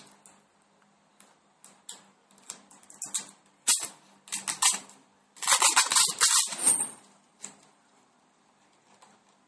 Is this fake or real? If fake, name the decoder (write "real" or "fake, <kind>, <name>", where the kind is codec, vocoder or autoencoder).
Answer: real